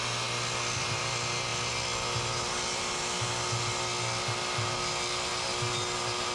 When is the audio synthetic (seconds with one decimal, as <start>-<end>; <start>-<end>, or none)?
none